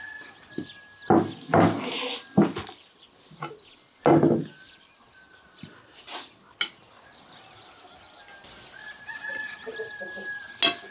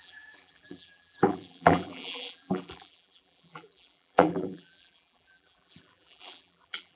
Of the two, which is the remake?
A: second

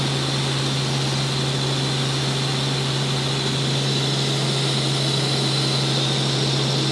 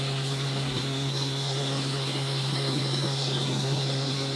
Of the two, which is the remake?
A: second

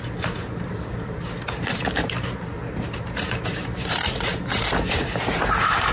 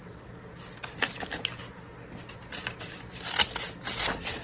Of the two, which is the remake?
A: first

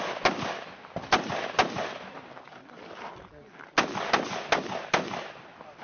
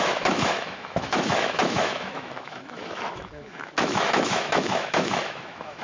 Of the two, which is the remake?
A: second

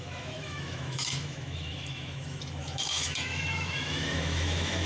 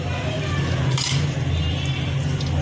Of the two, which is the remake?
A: first